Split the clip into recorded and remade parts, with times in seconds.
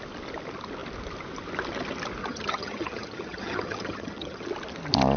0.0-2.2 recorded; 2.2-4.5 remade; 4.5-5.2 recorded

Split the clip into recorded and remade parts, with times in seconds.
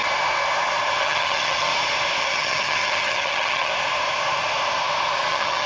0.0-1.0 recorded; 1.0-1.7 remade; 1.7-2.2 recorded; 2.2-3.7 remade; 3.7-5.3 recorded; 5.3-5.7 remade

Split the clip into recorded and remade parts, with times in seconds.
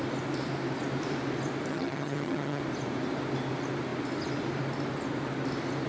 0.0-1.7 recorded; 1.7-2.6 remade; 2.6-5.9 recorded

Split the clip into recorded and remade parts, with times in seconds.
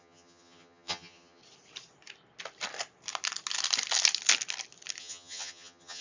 0.0-1.4 remade; 1.4-5.0 recorded; 5.0-6.0 remade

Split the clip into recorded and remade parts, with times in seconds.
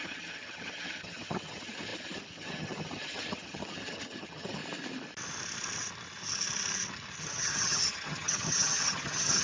0.0-4.6 remade; 4.6-7.2 recorded; 7.2-9.4 remade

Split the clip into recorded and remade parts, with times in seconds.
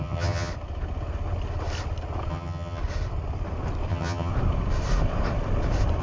0.0-0.5 remade; 0.5-2.3 recorded; 2.3-2.8 remade; 2.8-3.9 recorded; 3.9-4.3 remade; 4.3-6.0 recorded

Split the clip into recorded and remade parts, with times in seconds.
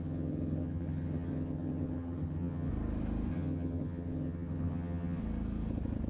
0.0-2.7 remade; 2.7-3.3 recorded; 3.3-5.2 remade; 5.2-6.1 recorded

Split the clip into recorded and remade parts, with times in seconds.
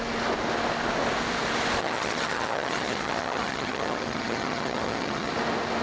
0.0-1.8 recorded; 1.8-5.3 remade; 5.3-5.8 recorded